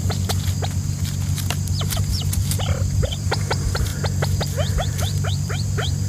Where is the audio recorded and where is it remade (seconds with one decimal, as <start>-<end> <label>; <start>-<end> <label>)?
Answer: 0.0-1.7 recorded; 1.7-3.9 remade; 3.9-4.7 recorded; 4.7-6.1 remade